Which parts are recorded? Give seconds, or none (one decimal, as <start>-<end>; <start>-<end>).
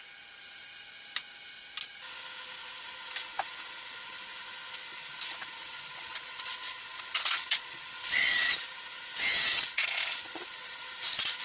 0.0-5.6; 8.5-9.5; 10.7-11.4